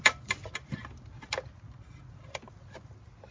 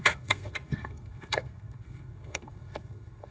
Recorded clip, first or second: first